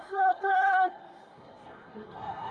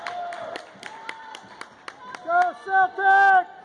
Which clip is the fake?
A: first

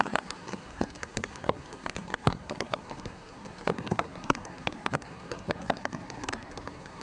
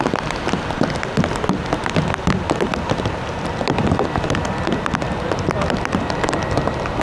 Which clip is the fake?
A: first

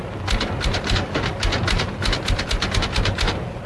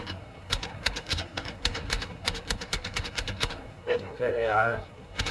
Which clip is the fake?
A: second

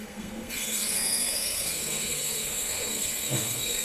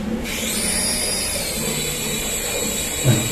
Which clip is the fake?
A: first